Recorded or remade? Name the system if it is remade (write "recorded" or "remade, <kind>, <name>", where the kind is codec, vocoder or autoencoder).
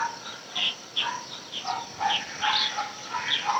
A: recorded